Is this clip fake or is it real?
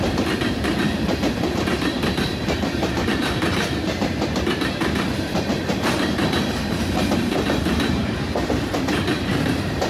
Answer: fake